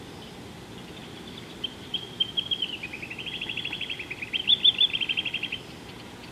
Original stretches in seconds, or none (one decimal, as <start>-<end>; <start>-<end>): 0.0-1.0; 3.1-6.3